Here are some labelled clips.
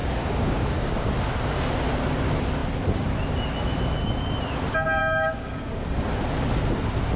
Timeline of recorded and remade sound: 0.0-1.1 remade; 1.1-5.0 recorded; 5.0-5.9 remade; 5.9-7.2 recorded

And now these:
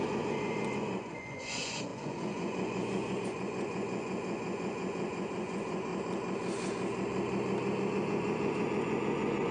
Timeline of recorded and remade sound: 0.0-5.9 remade; 5.9-7.9 recorded; 7.9-9.5 remade

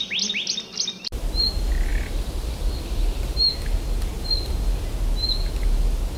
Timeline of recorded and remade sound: 0.0-6.2 recorded